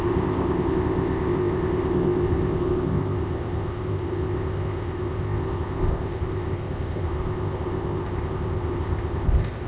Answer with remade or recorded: remade